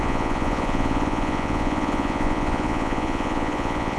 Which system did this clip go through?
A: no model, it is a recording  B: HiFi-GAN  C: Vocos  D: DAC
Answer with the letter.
C